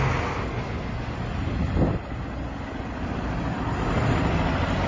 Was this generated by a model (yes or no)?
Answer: no